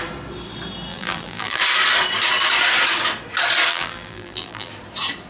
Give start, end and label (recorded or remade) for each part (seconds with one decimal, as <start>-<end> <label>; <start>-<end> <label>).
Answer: 0.0-0.9 recorded; 0.9-1.6 remade; 1.6-3.7 recorded; 3.7-4.7 remade; 4.7-5.3 recorded

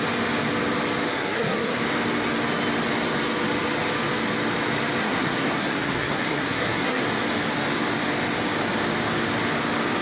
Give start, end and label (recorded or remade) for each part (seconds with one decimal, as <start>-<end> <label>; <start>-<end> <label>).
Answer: 0.0-1.1 recorded; 1.1-1.8 remade; 1.8-5.0 recorded; 5.0-7.0 remade; 7.0-10.0 recorded

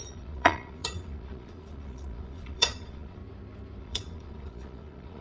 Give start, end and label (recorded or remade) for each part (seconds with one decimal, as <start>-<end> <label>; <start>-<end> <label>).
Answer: 0.0-3.2 remade; 3.2-3.8 recorded; 3.8-5.2 remade

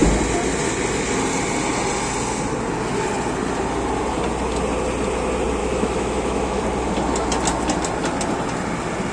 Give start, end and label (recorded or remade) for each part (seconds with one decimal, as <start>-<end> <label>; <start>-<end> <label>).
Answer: 0.0-5.6 recorded; 5.6-6.6 remade; 6.6-9.1 recorded